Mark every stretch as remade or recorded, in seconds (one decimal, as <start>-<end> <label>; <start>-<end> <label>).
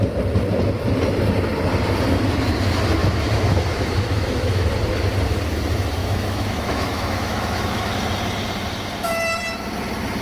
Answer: 0.0-3.0 recorded; 3.0-4.7 remade; 4.7-6.0 recorded; 6.0-8.0 remade; 8.0-10.2 recorded